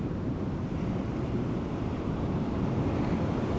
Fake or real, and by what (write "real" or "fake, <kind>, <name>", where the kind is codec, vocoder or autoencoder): real